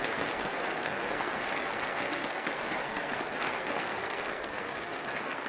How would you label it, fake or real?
fake